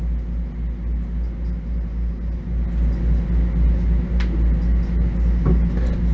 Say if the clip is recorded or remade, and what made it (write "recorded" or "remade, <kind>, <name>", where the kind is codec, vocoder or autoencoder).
recorded